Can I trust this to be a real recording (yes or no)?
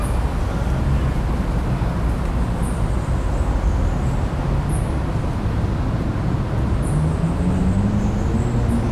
yes